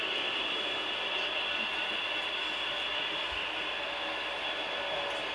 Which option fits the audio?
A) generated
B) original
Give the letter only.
B